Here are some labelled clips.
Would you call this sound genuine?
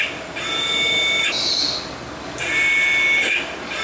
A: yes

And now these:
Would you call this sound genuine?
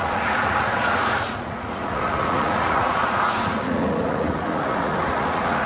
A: no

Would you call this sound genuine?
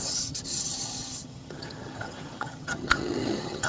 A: no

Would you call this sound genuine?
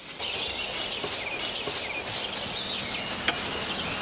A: yes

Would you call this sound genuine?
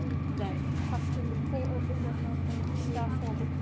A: yes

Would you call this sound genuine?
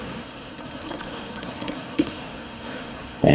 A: no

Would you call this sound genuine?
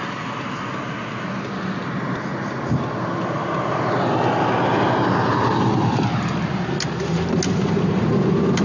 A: yes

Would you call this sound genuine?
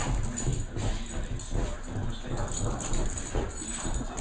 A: yes